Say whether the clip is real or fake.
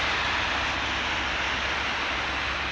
real